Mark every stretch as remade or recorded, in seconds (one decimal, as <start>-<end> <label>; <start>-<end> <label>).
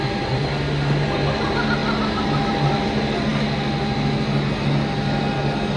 0.0-5.8 recorded